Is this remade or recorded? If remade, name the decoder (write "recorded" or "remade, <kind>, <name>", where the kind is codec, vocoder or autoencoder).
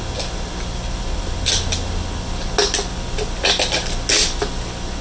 recorded